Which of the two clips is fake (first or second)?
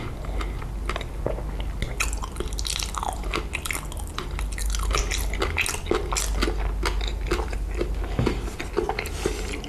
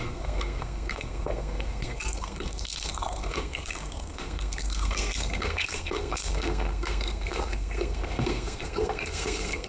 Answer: second